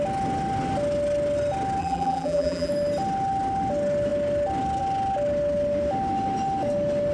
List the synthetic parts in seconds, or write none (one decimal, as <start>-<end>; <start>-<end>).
1.8-2.7